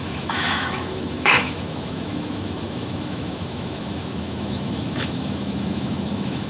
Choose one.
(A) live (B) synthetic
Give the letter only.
B